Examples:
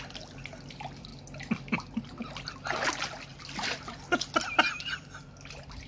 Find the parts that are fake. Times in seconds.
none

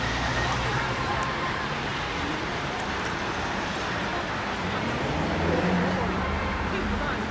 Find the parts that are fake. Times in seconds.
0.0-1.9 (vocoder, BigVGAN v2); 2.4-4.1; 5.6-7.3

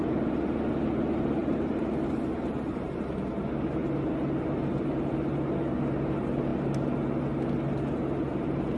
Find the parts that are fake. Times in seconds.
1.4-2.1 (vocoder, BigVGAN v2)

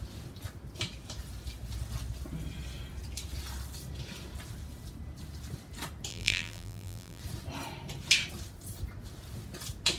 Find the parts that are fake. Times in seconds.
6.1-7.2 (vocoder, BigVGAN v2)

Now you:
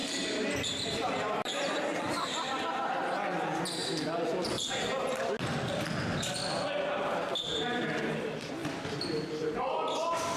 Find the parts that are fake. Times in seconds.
0.0-2.1 (vocoder, BigVGAN v2); 3.8-4.6

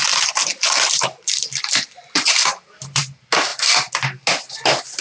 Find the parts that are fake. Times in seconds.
0.5-3.0 (vocoder, BigVGAN v2)

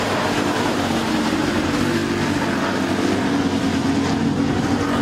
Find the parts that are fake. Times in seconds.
0.0-2.0 (vocoder, BigVGAN v2)

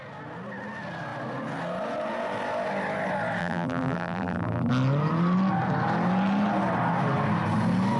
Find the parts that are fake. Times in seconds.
3.4-4.7 (vocoder, BigVGAN v2)